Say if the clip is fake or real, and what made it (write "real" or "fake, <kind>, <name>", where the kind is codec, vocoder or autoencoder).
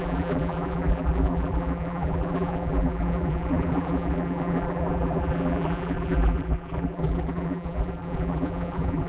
fake, vocoder, BigVGAN v2